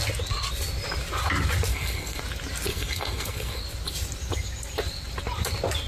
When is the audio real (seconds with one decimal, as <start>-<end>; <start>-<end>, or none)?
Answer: 0.0-1.7; 2.2-2.7; 3.6-5.9